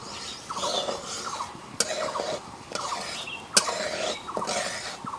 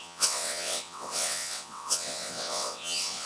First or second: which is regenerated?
second